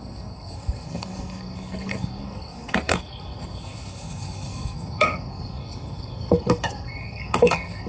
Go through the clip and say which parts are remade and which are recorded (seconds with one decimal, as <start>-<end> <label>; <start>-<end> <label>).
0.0-7.9 remade

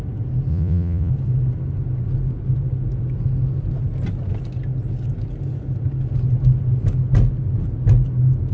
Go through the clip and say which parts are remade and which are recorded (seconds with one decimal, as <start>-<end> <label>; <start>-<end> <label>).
0.0-0.5 recorded; 0.5-1.1 remade; 1.1-8.5 recorded

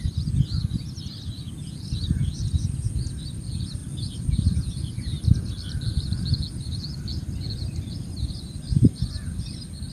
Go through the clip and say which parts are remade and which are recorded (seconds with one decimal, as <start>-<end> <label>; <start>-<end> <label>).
0.0-3.8 remade; 3.8-4.4 recorded; 4.4-5.1 remade; 5.1-8.3 recorded; 8.3-9.9 remade